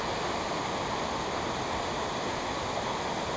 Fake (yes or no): no